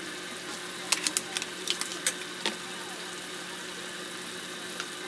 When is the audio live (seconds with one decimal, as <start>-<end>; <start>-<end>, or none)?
0.0-5.1